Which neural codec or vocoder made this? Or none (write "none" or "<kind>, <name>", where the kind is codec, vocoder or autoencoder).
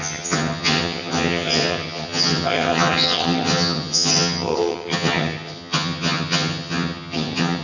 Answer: vocoder, HiFi-GAN